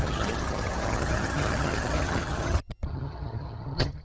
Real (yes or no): no